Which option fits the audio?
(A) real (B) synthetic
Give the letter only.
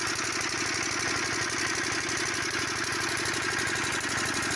A